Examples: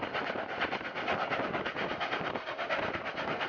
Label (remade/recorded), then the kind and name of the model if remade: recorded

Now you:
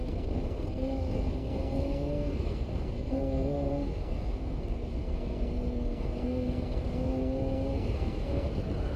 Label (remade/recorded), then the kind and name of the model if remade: remade, codec, SNAC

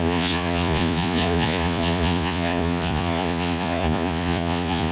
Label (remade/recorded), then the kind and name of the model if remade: remade, vocoder, Vocos